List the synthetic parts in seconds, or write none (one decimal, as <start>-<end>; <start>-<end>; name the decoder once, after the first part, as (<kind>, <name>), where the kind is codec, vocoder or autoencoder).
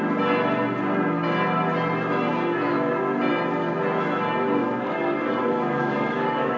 4.6-6.6 (codec, DAC)